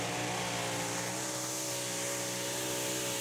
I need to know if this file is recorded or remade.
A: recorded